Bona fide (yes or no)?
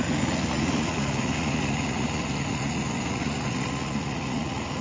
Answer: no